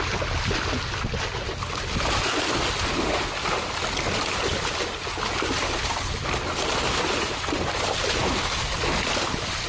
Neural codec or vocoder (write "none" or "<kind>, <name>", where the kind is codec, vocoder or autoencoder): none